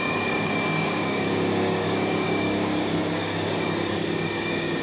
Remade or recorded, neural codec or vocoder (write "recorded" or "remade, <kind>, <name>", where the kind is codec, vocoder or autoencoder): remade, codec, DAC